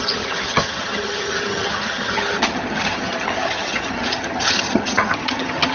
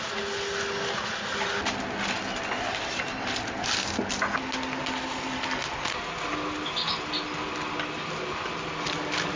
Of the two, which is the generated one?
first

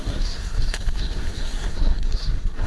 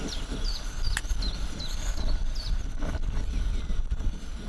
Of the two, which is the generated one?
first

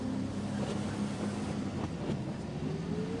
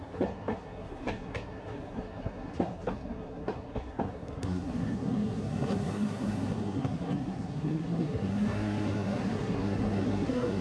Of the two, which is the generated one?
second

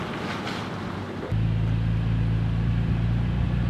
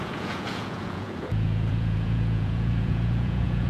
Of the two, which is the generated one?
second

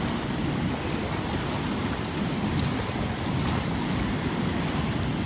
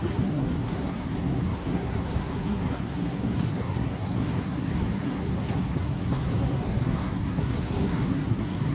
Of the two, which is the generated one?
second